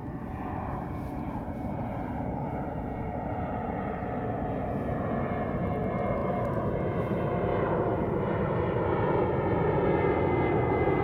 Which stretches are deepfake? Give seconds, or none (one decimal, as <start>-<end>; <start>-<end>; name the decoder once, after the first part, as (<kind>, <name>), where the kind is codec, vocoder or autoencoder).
0.0-4.0 (vocoder, BigVGAN v2); 7.5-8.8